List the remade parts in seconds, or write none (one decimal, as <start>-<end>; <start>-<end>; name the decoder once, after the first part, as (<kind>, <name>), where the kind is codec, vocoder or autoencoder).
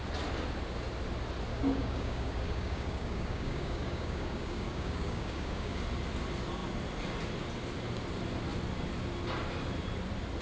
1.5-5.8 (codec, DAC)